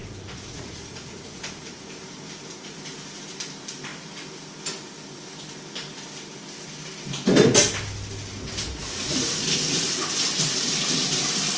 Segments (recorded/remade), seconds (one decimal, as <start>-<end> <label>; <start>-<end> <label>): 0.0-1.8 remade; 1.8-8.8 recorded; 8.8-9.3 remade; 9.3-11.6 recorded